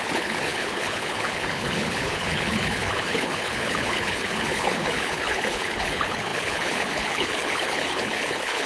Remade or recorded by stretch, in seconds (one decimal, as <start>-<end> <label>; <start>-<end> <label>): 0.0-8.7 remade